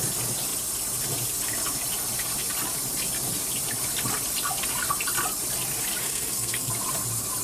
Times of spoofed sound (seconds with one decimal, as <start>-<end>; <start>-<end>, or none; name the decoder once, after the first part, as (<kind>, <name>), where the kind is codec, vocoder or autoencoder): 6.0-6.7 (codec, SNAC)